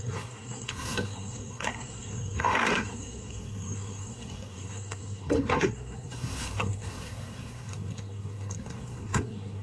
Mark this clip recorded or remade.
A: remade